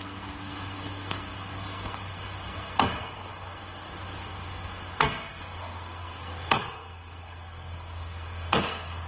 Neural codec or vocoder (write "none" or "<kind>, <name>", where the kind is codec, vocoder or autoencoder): codec, SNAC